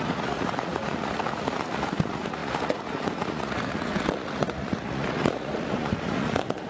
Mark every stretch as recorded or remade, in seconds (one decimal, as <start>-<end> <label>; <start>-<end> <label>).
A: 0.0-6.7 remade